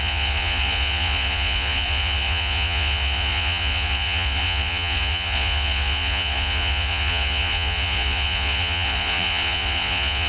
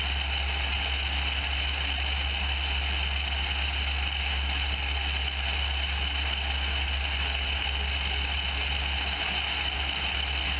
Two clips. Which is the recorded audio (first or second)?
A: second